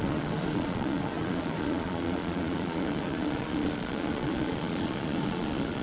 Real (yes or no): no